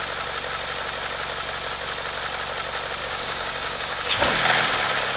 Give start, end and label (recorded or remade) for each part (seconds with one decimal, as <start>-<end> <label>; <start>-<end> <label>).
0.0-3.0 recorded; 3.0-4.2 remade; 4.2-5.2 recorded